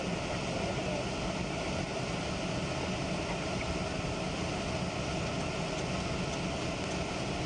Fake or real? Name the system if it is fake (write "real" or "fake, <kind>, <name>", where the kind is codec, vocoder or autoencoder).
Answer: real